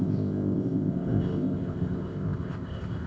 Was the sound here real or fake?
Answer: fake